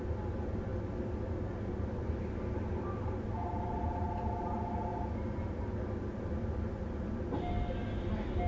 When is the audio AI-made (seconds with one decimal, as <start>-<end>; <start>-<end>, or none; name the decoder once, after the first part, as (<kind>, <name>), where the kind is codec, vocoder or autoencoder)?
none